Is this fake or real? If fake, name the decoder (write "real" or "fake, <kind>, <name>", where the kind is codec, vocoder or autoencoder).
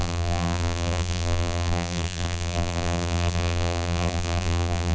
fake, vocoder, BigVGAN v2